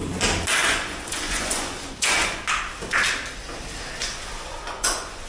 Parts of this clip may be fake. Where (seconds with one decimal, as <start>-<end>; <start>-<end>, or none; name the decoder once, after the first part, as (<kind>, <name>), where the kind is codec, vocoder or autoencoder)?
0.6-2.4 (vocoder, Vocos); 4.0-5.3